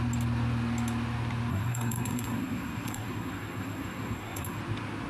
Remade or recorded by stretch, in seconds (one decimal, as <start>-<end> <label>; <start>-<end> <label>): 0.0-1.5 recorded; 1.5-4.6 remade; 4.6-5.1 recorded